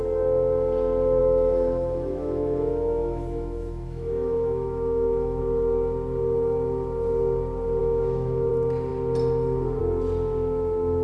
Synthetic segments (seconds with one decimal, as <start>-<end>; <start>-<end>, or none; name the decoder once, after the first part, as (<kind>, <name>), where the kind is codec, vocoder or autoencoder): 1.2-5.4 (autoencoder, DAC-VAE); 7.8-8.5